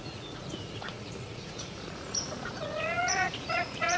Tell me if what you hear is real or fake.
fake